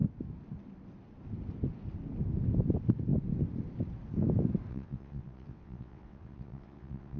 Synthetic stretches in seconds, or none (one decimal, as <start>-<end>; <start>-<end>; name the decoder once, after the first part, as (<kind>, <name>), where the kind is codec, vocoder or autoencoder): 4.7-7.2 (vocoder, WaveNeXt)